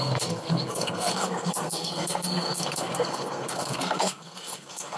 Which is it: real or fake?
fake